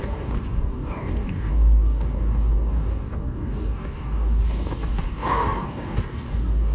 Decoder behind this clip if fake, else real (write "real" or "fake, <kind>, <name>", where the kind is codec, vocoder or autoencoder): fake, codec, DAC